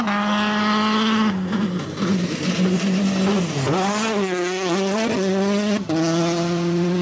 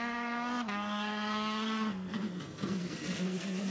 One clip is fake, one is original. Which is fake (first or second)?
second